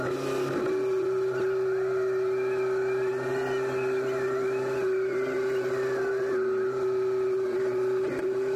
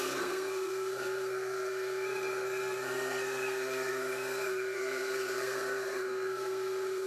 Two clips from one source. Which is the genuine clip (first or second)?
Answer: first